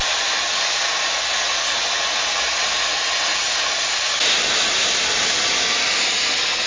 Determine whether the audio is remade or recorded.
recorded